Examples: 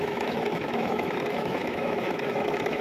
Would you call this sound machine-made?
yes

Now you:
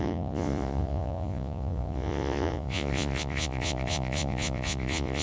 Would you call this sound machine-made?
yes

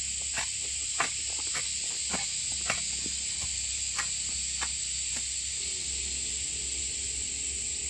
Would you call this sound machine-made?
no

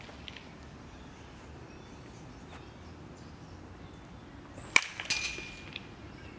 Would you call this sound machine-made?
no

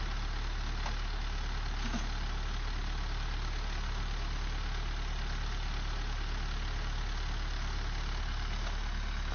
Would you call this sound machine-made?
no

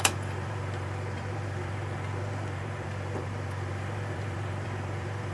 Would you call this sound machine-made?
yes